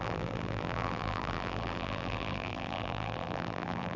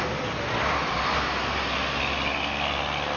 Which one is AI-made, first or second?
first